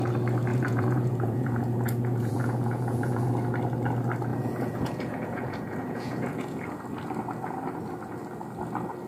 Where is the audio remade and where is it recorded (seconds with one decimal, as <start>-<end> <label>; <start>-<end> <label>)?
0.0-0.5 recorded; 0.5-3.3 remade; 3.3-4.3 recorded; 4.3-6.8 remade; 6.8-9.1 recorded